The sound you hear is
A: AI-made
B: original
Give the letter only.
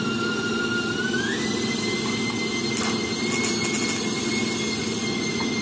B